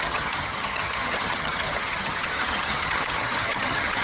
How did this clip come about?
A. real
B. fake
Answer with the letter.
B